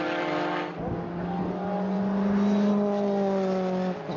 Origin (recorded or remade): recorded